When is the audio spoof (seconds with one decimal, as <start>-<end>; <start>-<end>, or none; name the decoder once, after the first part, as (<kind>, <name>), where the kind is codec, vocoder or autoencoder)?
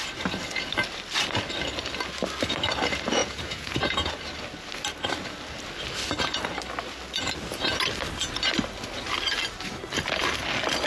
3.2-4.1 (vocoder, Vocos)